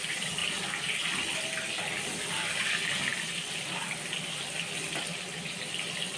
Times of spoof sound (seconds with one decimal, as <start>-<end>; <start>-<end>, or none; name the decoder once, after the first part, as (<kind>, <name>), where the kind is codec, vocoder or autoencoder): 0.0-0.4 (vocoder, BigVGAN v2); 2.0-6.2

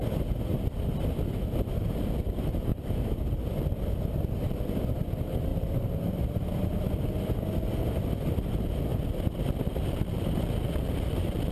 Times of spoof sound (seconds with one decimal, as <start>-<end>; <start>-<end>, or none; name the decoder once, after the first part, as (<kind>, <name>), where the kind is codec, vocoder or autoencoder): 2.7-3.3 (vocoder, BigVGAN v2); 5.5-6.9